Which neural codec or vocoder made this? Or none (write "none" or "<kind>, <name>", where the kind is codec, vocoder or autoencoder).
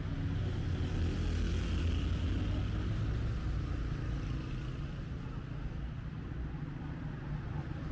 none